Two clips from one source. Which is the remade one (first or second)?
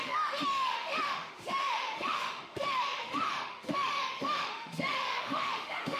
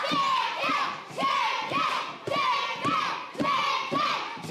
first